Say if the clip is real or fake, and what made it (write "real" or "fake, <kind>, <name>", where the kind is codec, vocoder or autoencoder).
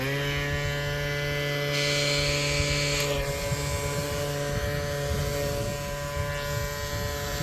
real